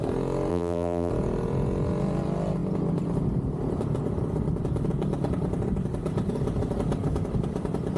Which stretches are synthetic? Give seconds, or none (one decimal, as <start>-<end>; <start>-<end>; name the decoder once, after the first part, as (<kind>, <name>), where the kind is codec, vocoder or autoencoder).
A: 0.5-1.1 (vocoder, BigVGAN v2)